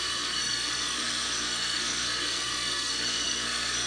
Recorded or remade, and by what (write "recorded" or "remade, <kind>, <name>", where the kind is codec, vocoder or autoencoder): remade, codec, SNAC